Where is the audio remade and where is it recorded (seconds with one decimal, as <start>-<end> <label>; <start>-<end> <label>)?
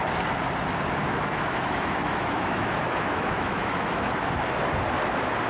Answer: 0.0-1.0 recorded; 1.0-4.1 remade; 4.1-5.5 recorded